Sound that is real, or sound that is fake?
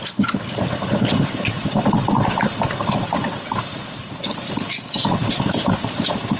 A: real